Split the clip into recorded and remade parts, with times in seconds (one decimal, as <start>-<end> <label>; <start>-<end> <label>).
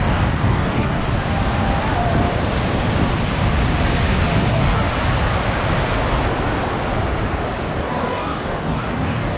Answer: 0.0-1.0 remade; 1.0-4.5 recorded; 4.5-4.9 remade; 4.9-7.8 recorded; 7.8-9.4 remade